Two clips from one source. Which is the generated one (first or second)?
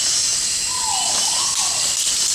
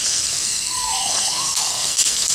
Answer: second